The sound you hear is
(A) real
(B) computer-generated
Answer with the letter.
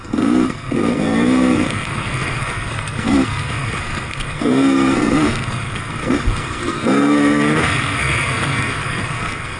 B